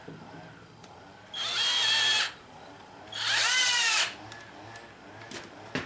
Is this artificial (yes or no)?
no